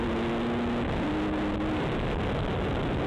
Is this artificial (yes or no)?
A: no